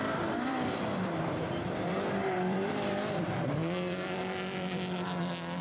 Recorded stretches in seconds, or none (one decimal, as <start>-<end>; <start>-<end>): 3.6-4.2